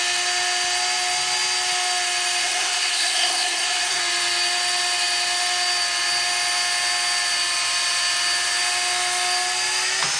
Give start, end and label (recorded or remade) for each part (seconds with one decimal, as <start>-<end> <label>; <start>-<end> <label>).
0.0-2.4 recorded; 2.4-4.0 remade; 4.0-10.2 recorded